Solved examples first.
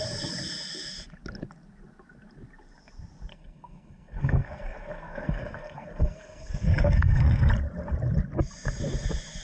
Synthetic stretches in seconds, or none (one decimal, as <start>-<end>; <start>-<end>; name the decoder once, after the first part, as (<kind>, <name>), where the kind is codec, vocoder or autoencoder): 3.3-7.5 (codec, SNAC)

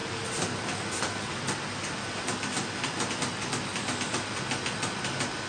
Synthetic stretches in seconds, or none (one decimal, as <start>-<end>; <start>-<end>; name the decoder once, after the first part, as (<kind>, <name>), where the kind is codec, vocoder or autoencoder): none

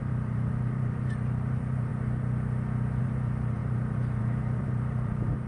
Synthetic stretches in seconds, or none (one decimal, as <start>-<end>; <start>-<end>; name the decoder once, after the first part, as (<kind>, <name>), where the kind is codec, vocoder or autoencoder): 0.0-1.9 (vocoder, BigVGAN v2); 3.0-5.5